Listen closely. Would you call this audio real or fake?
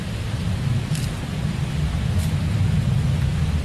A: fake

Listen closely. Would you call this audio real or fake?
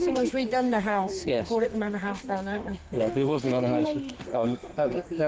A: fake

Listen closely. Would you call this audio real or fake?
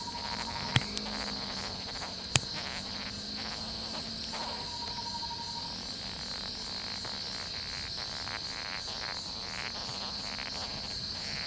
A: real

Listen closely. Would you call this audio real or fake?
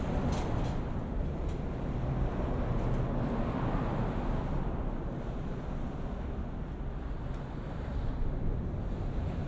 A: real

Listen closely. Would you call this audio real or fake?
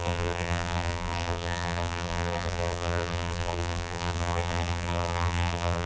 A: fake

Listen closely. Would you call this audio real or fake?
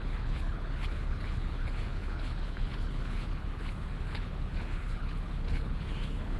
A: fake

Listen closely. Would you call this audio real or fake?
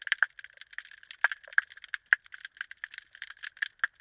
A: real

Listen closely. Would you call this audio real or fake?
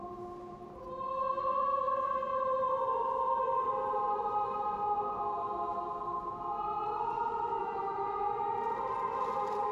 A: real